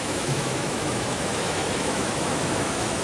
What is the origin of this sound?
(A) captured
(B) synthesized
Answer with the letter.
B